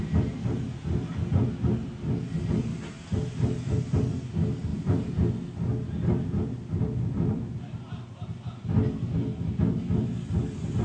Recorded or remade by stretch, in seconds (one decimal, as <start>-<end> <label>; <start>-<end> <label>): 0.0-2.7 recorded; 2.7-3.8 remade; 3.8-10.8 recorded